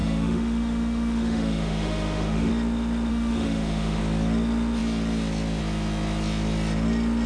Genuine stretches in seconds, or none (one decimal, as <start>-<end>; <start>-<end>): 2.5-3.1; 4.0-7.3